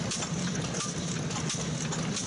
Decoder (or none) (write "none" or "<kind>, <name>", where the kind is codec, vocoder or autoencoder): none